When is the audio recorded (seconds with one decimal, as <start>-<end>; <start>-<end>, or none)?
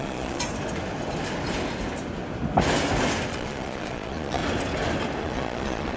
0.4-3.3; 4.4-5.2